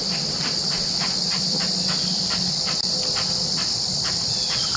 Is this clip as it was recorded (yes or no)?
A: no